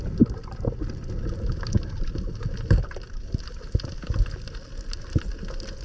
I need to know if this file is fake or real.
real